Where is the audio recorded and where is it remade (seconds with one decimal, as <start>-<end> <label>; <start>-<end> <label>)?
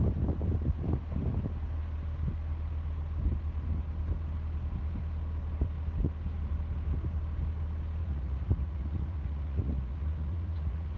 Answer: 0.0-8.0 recorded; 8.0-11.0 remade